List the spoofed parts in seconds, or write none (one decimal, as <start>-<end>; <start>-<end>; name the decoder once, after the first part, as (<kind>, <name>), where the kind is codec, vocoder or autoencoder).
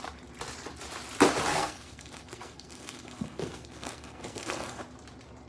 1.5-4.8 (codec, SNAC)